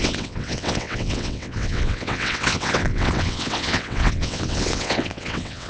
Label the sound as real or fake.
fake